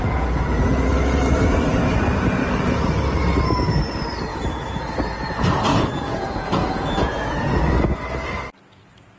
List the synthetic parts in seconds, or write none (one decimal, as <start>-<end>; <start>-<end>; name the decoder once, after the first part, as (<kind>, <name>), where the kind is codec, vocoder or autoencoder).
0.0-0.9 (vocoder, Vocos); 4.3-4.8; 5.7-7.7